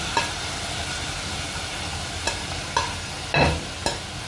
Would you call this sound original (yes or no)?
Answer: yes